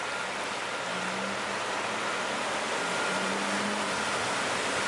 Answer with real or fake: real